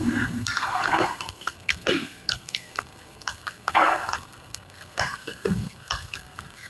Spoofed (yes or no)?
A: yes